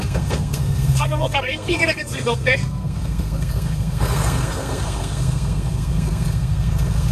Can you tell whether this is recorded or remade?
remade